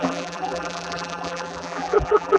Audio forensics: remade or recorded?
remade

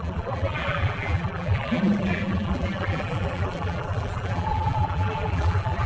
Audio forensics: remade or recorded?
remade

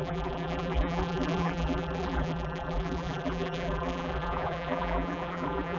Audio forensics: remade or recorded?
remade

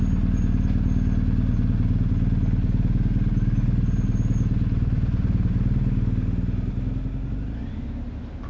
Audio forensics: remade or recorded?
recorded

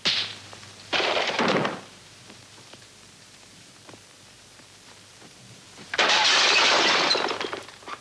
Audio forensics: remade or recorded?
remade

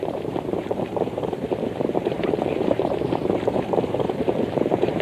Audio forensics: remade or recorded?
remade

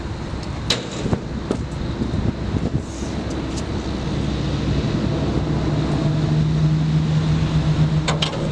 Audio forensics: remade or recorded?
recorded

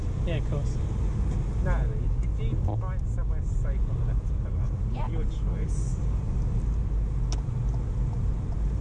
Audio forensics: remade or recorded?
recorded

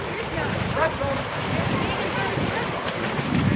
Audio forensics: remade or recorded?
remade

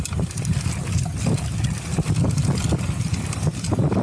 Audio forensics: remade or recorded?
recorded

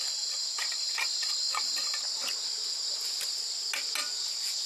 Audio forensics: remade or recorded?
recorded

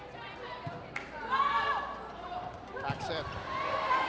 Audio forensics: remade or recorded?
remade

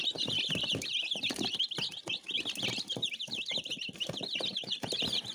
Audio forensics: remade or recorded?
remade